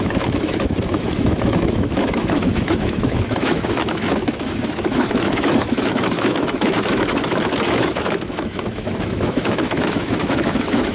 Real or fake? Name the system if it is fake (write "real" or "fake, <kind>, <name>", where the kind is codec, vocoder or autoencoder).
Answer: fake, autoencoder, DAC-VAE